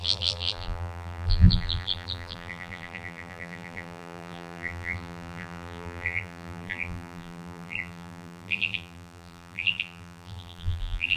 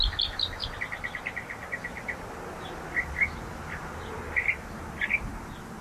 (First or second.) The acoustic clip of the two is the second